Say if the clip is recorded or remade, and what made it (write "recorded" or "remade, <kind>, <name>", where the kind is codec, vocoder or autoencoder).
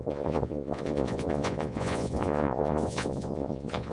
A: remade, vocoder, Vocos